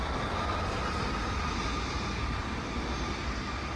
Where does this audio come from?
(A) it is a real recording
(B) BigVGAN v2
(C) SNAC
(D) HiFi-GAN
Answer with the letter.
A